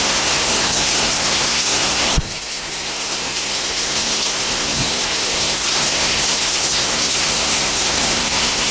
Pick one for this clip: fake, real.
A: fake